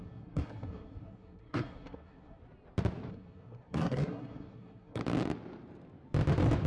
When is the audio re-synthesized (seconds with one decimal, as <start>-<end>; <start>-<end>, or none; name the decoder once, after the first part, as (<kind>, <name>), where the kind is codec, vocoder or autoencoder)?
0.0-2.4 (codec, SNAC); 3.1-5.0